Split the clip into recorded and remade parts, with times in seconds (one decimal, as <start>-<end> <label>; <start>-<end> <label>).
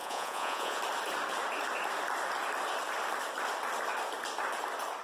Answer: 0.0-0.8 remade; 0.8-5.0 recorded